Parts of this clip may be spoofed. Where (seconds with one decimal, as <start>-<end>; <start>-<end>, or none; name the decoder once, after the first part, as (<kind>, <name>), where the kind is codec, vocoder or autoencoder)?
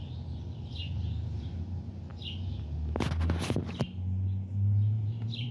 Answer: 0.0-2.1 (vocoder, BigVGAN v2); 4.5-5.5